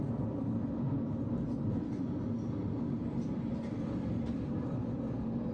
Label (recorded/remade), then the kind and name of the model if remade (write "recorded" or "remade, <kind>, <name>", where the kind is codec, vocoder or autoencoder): recorded